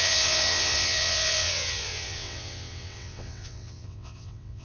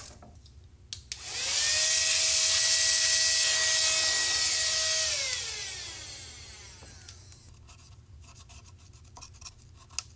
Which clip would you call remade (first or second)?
first